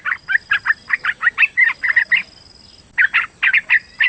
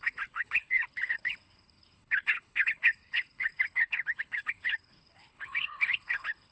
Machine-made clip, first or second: second